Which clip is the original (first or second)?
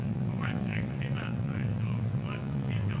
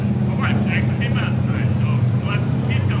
second